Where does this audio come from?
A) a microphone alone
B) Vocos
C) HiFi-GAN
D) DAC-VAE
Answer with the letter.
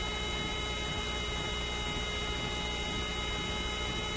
A